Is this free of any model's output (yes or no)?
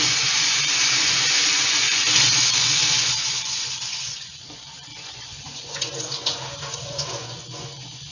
no